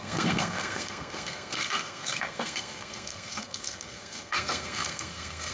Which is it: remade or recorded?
remade